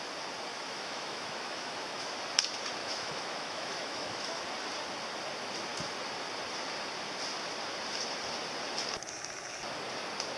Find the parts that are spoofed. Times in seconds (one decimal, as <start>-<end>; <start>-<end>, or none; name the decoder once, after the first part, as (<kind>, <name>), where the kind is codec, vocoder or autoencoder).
0.5-2.1 (autoencoder, DAC-VAE); 2.8-4.4